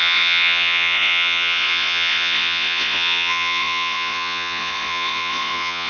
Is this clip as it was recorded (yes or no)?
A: no